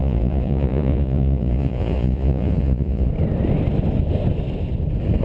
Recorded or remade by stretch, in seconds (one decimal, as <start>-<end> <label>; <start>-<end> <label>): 0.0-3.1 remade; 3.1-5.2 recorded